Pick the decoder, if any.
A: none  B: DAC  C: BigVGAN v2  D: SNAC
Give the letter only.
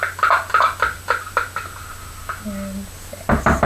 A